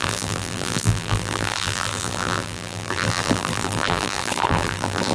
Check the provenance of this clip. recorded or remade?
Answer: remade